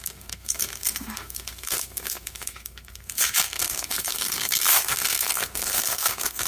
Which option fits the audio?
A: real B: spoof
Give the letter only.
B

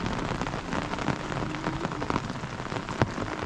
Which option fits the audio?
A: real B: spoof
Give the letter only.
A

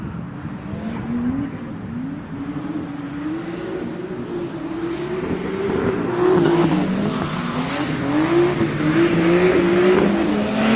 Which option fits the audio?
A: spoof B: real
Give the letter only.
B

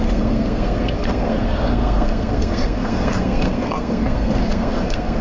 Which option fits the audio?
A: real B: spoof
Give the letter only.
B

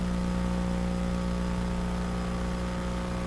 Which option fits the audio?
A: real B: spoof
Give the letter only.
A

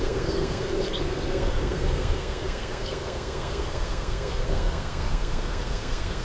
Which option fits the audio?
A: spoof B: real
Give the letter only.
A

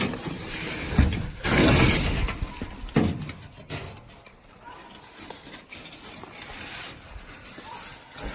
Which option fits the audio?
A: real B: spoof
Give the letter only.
A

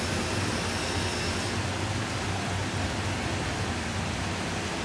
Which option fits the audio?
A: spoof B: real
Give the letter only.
B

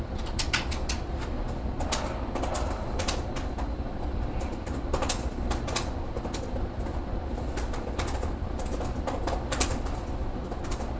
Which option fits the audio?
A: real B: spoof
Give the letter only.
A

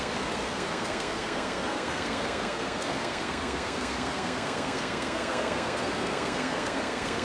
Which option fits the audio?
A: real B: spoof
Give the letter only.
B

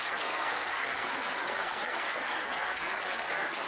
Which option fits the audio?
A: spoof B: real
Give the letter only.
A